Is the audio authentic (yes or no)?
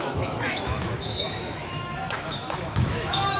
no